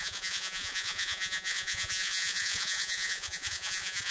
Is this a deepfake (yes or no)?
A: yes